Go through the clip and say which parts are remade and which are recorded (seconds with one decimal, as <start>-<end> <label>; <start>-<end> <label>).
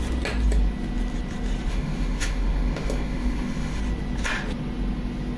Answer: 0.0-1.7 recorded; 1.7-3.8 remade; 3.8-5.4 recorded